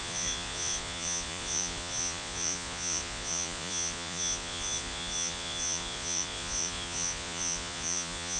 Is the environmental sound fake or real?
fake